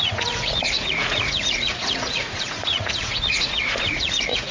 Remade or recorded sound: remade